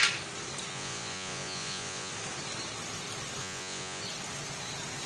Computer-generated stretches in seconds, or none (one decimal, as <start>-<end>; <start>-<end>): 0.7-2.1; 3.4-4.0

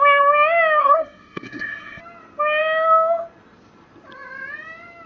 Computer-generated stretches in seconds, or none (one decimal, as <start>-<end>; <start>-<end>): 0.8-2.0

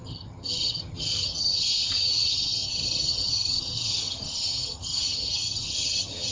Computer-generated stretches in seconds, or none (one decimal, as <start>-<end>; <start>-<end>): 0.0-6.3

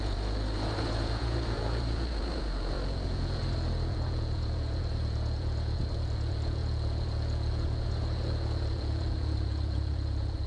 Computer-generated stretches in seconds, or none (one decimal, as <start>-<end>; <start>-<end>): 0.0-10.5

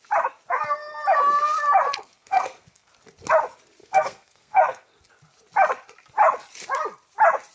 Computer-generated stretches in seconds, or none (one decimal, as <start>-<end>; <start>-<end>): 2.0-2.9; 3.8-5.0